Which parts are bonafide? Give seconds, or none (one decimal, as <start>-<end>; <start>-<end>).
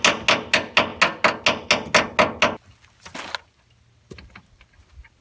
0.0-5.2